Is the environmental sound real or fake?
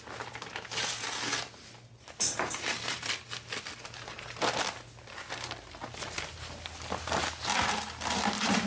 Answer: real